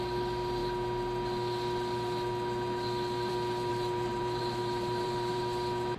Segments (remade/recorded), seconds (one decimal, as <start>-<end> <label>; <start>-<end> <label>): 0.0-3.7 recorded; 3.7-5.4 remade; 5.4-6.0 recorded